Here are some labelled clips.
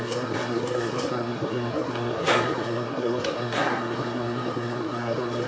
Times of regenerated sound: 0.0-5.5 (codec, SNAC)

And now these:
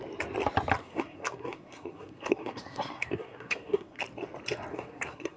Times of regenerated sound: 0.8-4.0 (codec, SNAC); 4.7-5.4

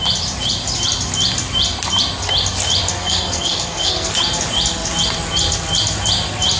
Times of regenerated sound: 3.0-4.1 (codec, SNAC)